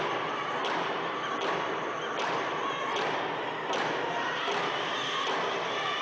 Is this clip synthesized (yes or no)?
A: yes